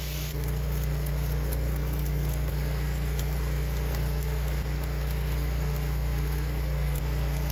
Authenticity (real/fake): fake